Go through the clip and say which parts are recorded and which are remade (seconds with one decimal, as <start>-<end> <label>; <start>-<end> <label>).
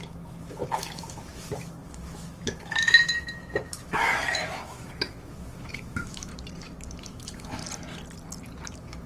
0.0-6.3 remade; 6.3-6.9 recorded; 6.9-7.6 remade; 7.6-8.7 recorded; 8.7-9.1 remade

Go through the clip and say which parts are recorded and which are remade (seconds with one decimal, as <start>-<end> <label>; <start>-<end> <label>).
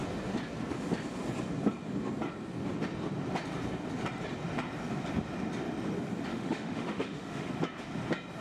0.0-6.3 recorded; 6.3-7.5 remade; 7.5-8.4 recorded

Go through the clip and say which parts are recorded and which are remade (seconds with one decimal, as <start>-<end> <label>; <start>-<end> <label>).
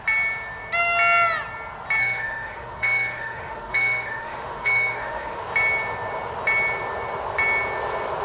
0.0-2.0 recorded; 2.0-5.4 remade; 5.4-8.2 recorded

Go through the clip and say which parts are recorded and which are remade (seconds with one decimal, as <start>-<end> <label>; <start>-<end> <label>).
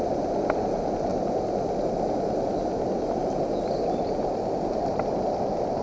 0.0-5.8 recorded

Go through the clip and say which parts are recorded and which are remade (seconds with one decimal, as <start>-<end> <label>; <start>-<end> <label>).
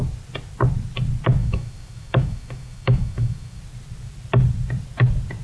0.0-1.4 recorded; 1.4-3.6 remade; 3.6-5.4 recorded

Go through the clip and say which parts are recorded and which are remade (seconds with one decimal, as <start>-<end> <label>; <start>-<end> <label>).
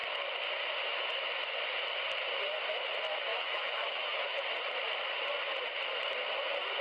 0.0-3.3 recorded; 3.3-4.4 remade; 4.4-6.8 recorded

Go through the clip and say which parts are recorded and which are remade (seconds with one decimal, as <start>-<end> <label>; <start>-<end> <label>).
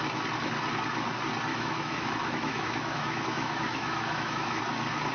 0.0-1.5 recorded; 1.5-4.6 remade; 4.6-5.1 recorded